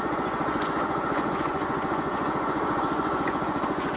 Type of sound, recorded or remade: remade